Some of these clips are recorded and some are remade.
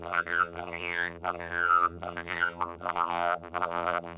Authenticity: remade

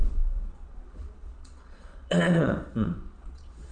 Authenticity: remade